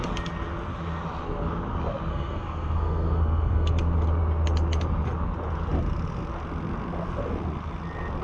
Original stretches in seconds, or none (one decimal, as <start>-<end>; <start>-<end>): 0.0-2.1; 3.7-8.2